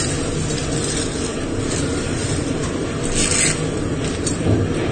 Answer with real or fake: real